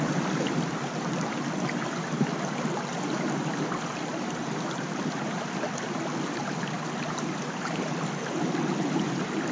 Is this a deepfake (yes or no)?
no